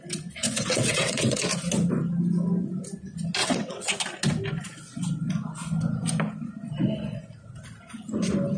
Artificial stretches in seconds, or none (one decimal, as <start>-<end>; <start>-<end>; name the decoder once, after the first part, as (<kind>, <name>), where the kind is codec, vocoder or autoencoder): 0.4-1.4 (vocoder, WaveNeXt); 3.4-3.9